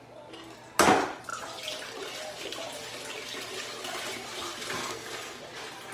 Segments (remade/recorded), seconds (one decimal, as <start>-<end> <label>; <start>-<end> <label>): 0.0-4.8 recorded; 4.8-5.4 remade; 5.4-5.9 recorded